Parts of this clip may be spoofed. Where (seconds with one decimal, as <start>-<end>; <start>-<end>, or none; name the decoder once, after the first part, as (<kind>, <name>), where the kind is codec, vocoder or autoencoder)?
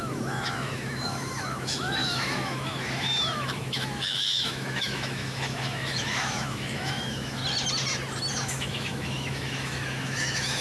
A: 0.0-7.4 (autoencoder, DAC-VAE); 8.3-10.6